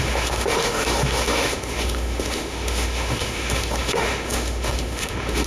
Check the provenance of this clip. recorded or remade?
remade